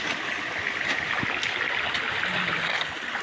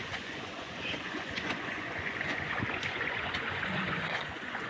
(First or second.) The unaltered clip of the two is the first